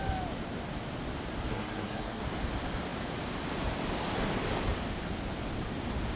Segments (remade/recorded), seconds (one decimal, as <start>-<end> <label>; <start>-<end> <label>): 0.0-1.5 recorded; 1.5-2.2 remade; 2.2-6.2 recorded